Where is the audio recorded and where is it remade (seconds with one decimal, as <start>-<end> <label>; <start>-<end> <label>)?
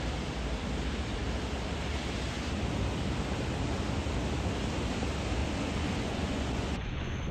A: 0.0-5.4 recorded; 5.4-7.3 remade